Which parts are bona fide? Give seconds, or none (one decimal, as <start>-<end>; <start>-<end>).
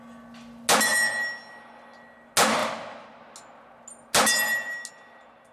0.0-5.5